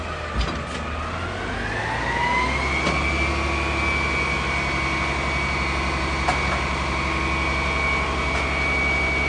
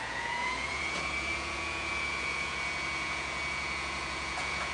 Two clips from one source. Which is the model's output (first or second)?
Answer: second